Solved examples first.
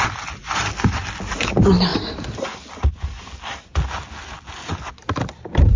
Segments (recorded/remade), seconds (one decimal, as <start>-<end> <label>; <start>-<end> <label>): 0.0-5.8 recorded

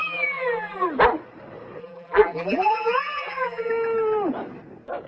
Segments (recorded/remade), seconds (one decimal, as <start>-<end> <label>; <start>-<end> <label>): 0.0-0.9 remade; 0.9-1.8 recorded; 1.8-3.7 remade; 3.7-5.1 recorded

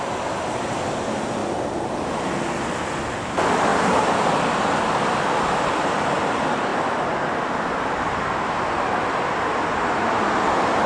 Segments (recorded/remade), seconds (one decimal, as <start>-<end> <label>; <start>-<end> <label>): 0.0-10.9 recorded

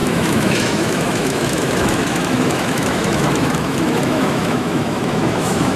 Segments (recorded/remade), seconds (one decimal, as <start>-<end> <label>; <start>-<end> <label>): 0.0-5.8 remade